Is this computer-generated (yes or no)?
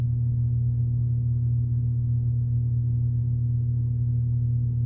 no